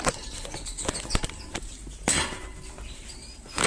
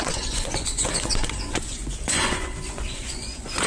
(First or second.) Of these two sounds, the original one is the first